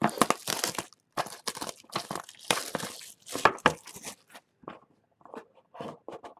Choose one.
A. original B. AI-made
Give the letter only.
A